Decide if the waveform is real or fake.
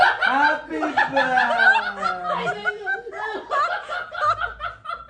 real